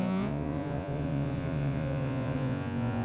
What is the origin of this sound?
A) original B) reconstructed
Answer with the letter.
B